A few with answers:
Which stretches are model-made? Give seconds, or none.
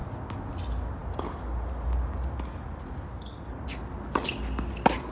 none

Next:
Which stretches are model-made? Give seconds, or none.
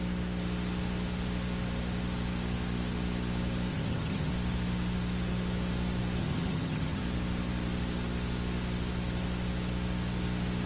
3.7-4.3 (vocoder, HiFi-GAN); 6.2-7.0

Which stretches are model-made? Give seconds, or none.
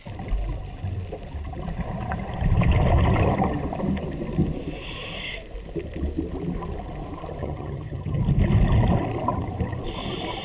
7.4-8.2 (vocoder, HiFi-GAN)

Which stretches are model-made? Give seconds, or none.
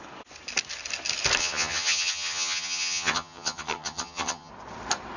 1.4-4.5 (vocoder, HiFi-GAN)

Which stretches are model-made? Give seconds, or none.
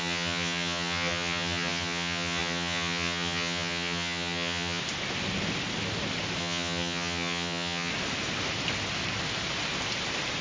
0.0-4.8 (vocoder, HiFi-GAN); 6.4-7.9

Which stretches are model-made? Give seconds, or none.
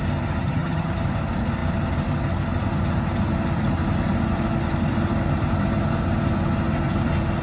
0.4-0.9 (vocoder, HiFi-GAN)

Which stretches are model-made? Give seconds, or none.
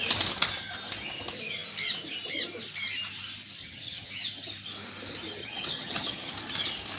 3.6-4.1 (vocoder, HiFi-GAN); 5.4-6.3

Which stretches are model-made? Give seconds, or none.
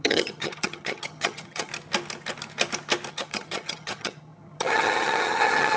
0.0-1.7 (vocoder, HiFi-GAN); 3.1-5.8